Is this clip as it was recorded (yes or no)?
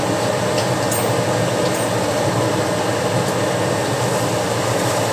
yes